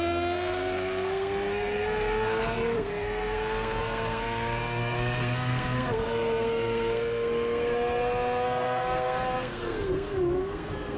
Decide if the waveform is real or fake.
fake